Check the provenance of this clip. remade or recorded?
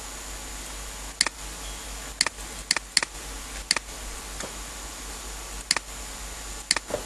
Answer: recorded